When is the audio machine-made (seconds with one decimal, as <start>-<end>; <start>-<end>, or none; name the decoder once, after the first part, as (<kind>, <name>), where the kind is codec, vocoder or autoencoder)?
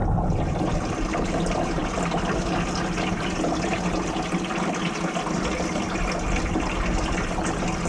none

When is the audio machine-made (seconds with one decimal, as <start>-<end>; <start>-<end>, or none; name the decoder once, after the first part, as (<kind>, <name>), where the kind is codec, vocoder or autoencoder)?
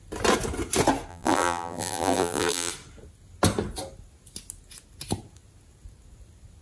1.1-2.7 (vocoder, BigVGAN v2)